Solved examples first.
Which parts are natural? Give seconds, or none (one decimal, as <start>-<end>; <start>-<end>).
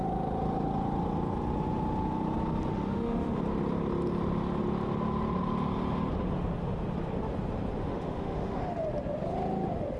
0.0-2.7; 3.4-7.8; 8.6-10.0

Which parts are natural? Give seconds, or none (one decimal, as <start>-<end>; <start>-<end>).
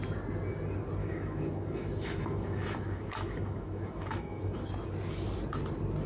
0.0-1.0; 4.7-6.1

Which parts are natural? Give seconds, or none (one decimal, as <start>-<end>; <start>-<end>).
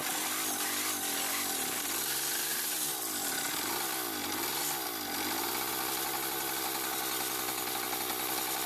0.0-8.7